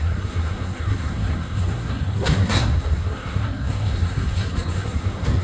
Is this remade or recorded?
remade